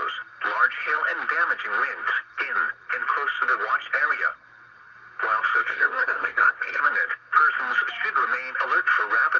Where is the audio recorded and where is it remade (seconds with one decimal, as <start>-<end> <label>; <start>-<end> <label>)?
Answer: 0.0-5.6 recorded; 5.6-6.8 remade; 6.8-9.4 recorded